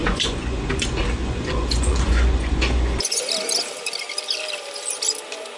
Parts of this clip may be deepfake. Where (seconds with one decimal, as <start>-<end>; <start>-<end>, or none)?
0.0-0.7; 1.2-3.3